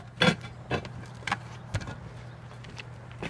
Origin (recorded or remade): recorded